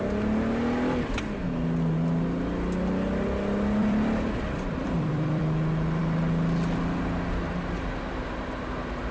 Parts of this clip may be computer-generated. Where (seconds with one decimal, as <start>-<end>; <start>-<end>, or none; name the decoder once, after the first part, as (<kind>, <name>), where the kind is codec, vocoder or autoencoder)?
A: 3.8-5.4 (vocoder, BigVGAN v2)